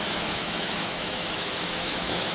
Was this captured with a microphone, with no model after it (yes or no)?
no